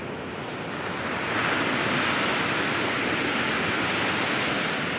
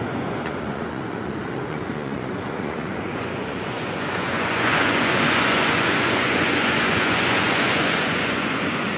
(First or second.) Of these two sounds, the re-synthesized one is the second